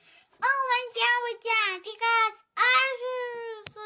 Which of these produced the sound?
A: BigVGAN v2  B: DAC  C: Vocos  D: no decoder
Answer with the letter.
D